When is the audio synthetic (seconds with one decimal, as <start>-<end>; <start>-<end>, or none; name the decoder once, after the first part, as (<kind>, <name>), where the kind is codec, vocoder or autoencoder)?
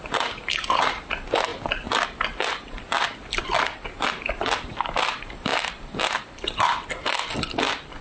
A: none